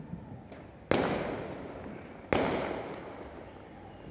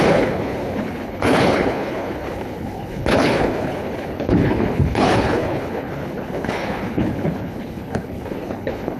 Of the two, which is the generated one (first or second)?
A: second